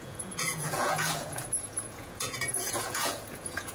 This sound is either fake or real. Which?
fake